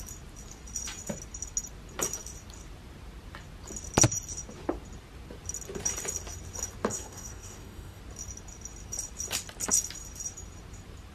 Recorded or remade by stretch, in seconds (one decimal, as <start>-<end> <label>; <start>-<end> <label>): 0.0-6.9 recorded; 6.9-8.0 remade; 8.0-11.1 recorded